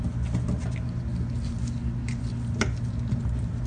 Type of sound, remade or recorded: recorded